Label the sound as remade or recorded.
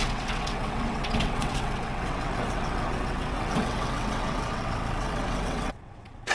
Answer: remade